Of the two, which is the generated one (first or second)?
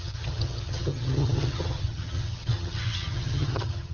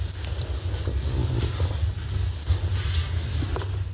first